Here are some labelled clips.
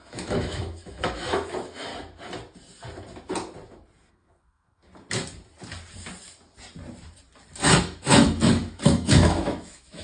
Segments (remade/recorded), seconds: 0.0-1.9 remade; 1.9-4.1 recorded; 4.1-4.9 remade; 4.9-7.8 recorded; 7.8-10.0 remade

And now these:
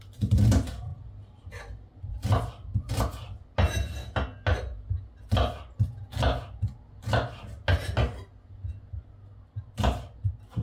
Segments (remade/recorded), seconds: 0.0-10.6 recorded

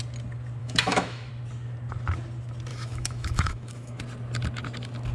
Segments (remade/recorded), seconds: 0.0-0.6 recorded; 0.6-1.3 remade; 1.3-2.7 recorded; 2.7-4.0 remade; 4.0-5.1 recorded

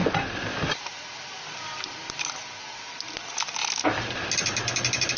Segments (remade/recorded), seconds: 0.0-5.2 recorded

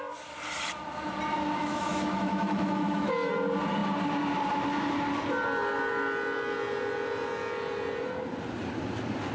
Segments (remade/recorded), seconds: 0.0-1.6 recorded; 1.6-3.3 remade; 3.3-9.3 recorded